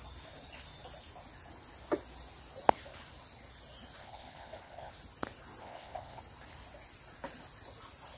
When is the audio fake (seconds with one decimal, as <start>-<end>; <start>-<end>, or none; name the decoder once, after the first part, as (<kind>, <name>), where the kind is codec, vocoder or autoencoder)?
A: 4.0-4.9 (codec, HILCodec); 5.6-6.2